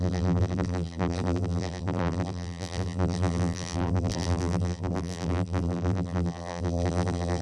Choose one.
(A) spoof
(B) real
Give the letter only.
A